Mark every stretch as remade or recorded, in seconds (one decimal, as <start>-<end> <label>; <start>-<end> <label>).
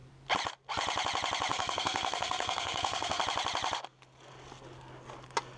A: 0.0-1.5 recorded; 1.5-3.2 remade; 3.2-5.6 recorded